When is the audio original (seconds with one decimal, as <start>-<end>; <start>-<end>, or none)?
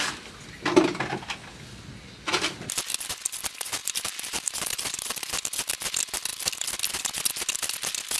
0.0-3.8; 5.3-8.2